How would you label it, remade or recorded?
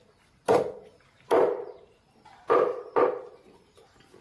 recorded